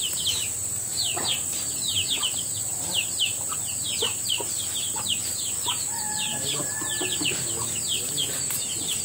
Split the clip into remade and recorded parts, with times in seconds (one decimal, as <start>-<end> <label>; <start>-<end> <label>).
0.0-9.0 recorded